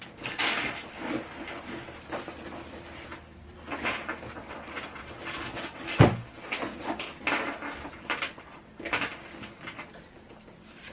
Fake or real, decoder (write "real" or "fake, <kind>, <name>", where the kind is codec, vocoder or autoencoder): real